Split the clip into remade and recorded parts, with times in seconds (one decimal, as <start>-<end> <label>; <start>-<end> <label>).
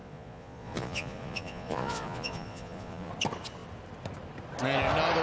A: 0.0-3.1 remade; 3.1-5.2 recorded